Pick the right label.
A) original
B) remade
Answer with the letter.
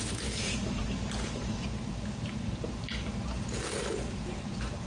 B